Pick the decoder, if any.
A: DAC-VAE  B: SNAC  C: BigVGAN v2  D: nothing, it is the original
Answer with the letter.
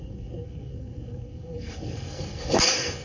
B